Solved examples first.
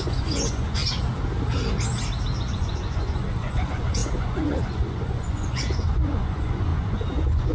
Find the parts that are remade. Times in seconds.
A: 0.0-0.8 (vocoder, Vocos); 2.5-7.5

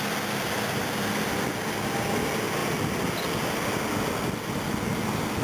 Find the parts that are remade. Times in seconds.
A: none